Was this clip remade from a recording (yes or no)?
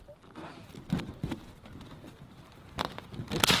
no